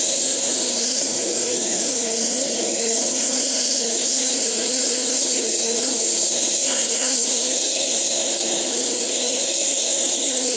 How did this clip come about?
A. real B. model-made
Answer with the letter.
B